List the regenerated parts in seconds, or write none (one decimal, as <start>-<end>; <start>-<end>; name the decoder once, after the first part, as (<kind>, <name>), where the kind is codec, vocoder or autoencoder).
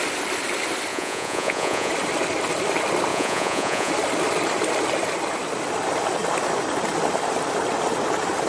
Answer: 0.9-1.9 (vocoder, Vocos); 3.1-3.9